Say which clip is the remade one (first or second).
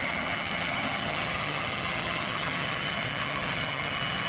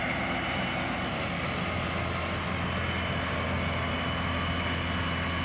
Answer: first